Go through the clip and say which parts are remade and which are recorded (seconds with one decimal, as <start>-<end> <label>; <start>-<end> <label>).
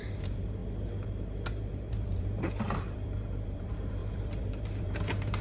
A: 0.0-0.6 remade; 0.6-1.5 recorded; 1.5-5.4 remade